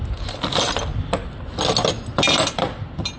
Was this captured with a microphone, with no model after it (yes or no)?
yes